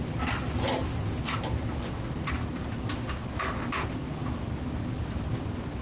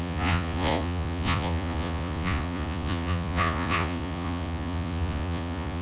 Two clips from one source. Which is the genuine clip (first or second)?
first